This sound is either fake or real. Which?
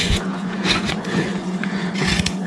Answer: fake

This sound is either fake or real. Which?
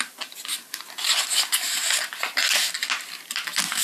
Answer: real